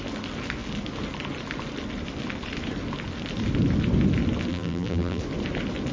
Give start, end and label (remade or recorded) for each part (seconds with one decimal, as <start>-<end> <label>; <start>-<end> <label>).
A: 0.0-4.5 recorded; 4.5-5.2 remade; 5.2-5.9 recorded

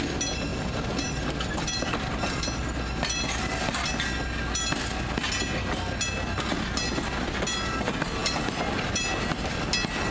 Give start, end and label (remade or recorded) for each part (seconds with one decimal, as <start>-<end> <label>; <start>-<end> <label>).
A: 0.0-0.5 recorded; 0.5-2.6 remade; 2.6-8.2 recorded; 8.2-9.5 remade; 9.5-10.1 recorded

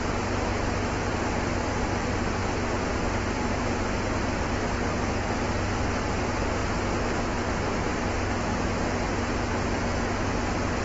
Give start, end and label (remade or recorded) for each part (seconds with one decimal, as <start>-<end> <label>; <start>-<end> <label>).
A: 0.0-10.8 recorded

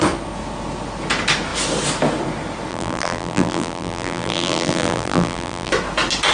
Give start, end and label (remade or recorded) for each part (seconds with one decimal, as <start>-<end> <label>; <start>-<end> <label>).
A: 0.0-2.7 recorded; 2.7-5.7 remade; 5.7-6.3 recorded

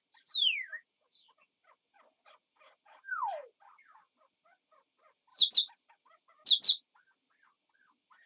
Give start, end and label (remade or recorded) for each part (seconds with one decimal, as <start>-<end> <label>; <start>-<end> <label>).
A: 0.0-5.3 recorded; 5.3-5.9 remade; 5.9-8.3 recorded